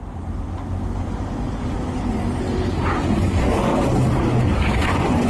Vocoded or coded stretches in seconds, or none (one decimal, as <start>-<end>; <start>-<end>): 3.2-3.7; 4.7-5.3